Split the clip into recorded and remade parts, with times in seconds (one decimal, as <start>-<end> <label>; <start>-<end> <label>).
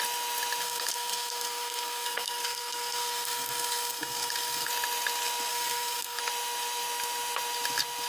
0.0-0.6 recorded; 0.6-4.7 remade; 4.7-5.5 recorded; 5.5-6.2 remade; 6.2-8.1 recorded